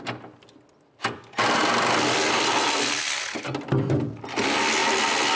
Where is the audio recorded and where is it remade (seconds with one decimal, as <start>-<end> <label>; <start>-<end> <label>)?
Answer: 0.0-5.4 recorded